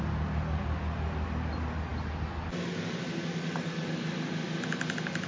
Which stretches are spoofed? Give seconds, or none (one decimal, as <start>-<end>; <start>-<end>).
none